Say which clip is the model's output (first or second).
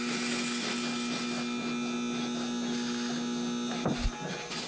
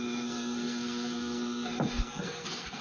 second